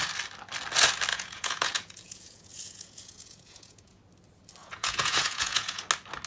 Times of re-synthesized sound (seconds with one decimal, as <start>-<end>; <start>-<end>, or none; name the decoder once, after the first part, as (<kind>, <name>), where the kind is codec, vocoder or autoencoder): 1.1-4.0 (vocoder, Vocos); 4.6-5.8